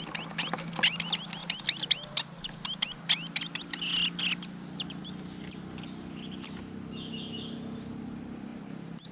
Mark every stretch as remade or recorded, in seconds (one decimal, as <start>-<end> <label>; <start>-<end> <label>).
0.0-9.1 recorded